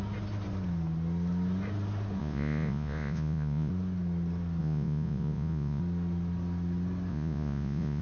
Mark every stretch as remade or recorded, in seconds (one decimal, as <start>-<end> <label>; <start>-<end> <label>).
0.0-2.2 recorded; 2.2-3.7 remade; 3.7-4.6 recorded; 4.6-5.8 remade; 5.8-7.1 recorded; 7.1-8.0 remade

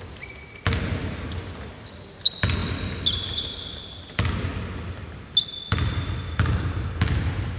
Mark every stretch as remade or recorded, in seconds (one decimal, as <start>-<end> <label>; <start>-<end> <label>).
0.0-7.6 recorded

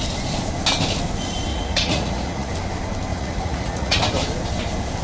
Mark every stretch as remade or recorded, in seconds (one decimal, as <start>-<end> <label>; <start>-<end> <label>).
0.0-1.5 recorded; 1.5-2.5 remade; 2.5-3.1 recorded; 3.1-4.0 remade; 4.0-5.0 recorded

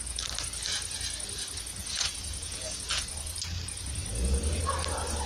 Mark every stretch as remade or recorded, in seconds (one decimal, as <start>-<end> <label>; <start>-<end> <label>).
0.0-1.8 recorded; 1.8-2.8 remade; 2.8-5.3 recorded

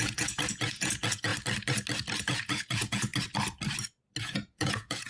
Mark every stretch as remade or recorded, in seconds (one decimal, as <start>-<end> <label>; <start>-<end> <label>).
0.0-1.3 remade; 1.3-2.2 recorded; 2.2-3.1 remade; 3.1-4.2 recorded; 4.2-5.1 remade

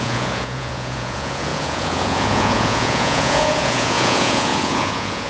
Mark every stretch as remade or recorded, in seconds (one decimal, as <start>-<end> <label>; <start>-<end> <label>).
0.0-5.3 remade

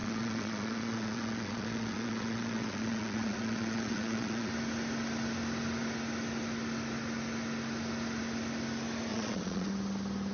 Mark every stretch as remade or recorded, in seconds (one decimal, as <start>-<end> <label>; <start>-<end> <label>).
0.0-4.5 remade; 4.5-9.1 recorded; 9.1-9.7 remade; 9.7-10.3 recorded